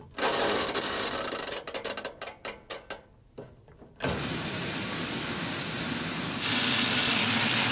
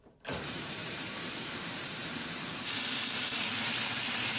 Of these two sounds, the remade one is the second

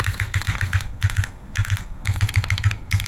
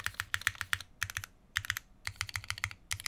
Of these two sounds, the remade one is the first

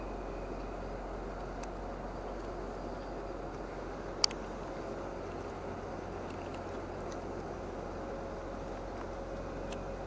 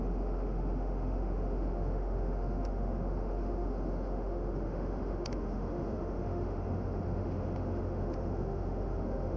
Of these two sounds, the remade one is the second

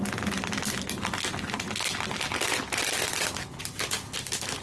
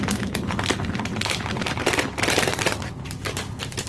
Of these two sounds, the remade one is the second